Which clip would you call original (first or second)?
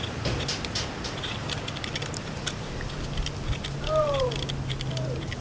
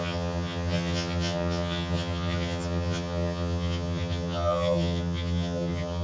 first